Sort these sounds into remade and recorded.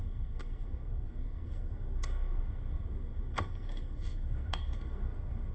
remade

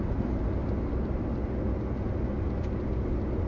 recorded